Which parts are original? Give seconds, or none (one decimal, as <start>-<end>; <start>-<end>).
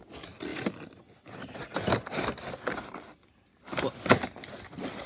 0.0-5.1